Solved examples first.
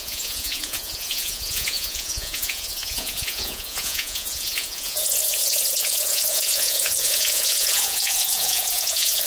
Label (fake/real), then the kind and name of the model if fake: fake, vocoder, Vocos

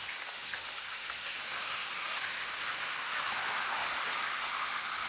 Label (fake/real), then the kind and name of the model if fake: fake, autoencoder, DAC-VAE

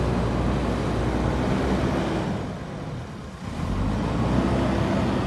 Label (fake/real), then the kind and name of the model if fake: real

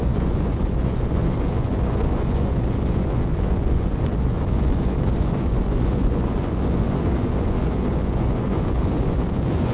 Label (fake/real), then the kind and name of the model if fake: fake, vocoder, Vocos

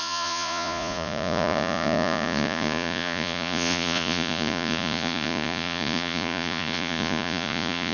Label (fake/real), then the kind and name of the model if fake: fake, vocoder, Vocos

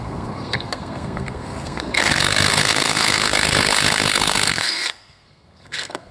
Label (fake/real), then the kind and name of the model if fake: fake, codec, SNAC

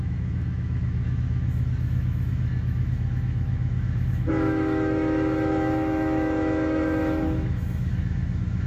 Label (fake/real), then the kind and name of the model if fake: fake, autoencoder, DAC-VAE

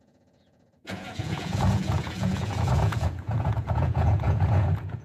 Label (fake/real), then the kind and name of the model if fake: fake, vocoder, Vocos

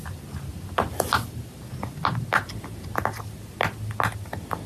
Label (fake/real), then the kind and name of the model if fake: real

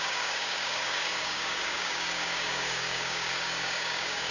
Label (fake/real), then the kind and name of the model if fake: fake, codec, DAC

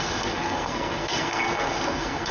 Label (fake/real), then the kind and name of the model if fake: fake, codec, SNAC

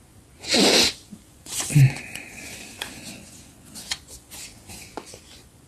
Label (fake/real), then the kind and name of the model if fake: fake, vocoder, Vocos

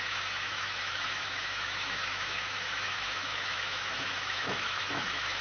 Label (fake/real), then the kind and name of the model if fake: fake, autoencoder, DAC-VAE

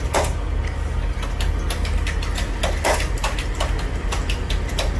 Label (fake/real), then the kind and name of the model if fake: real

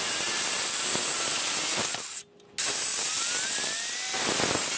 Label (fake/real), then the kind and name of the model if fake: real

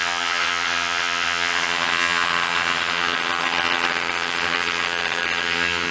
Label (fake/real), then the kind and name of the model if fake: fake, vocoder, HiFi-GAN